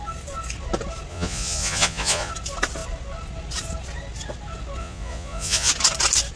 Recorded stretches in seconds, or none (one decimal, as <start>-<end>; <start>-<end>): 0.0-1.1; 2.3-4.8; 5.7-6.4